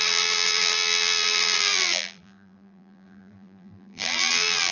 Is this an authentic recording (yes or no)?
no